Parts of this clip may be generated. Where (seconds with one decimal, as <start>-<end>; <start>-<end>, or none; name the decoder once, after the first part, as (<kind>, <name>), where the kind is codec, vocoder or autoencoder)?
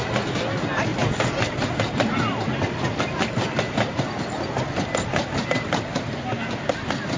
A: none